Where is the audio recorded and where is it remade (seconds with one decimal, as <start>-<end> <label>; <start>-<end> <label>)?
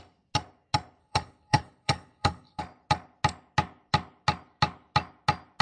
0.0-1.0 recorded; 1.0-2.6 remade; 2.6-5.6 recorded